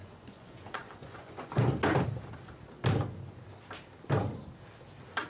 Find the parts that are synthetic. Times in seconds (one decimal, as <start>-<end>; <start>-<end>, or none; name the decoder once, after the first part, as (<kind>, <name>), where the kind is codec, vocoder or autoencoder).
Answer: 0.0-1.8 (vocoder, Vocos)